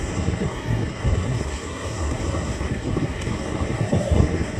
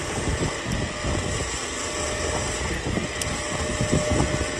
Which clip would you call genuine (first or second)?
second